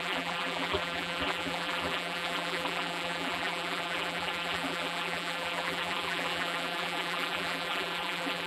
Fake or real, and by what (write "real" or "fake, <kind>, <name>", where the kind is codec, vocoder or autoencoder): fake, vocoder, BigVGAN v2